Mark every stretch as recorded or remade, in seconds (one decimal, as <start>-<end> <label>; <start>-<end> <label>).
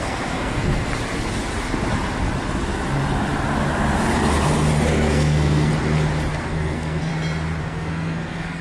0.0-0.9 remade; 0.9-4.9 recorded; 4.9-5.7 remade; 5.7-6.3 recorded; 6.3-7.1 remade; 7.1-7.6 recorded; 7.6-8.6 remade